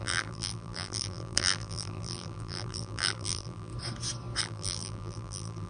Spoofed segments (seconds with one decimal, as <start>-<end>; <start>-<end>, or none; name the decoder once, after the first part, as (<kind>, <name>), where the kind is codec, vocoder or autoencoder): 0.0-3.7 (vocoder, BigVGAN v2); 4.4-5.7